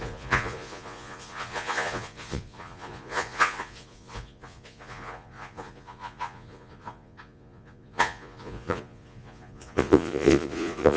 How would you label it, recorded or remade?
remade